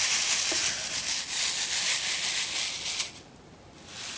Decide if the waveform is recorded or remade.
recorded